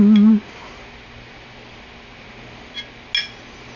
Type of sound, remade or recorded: recorded